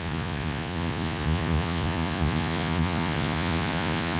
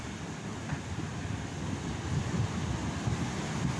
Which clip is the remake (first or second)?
first